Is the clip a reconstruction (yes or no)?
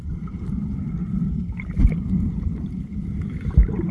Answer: yes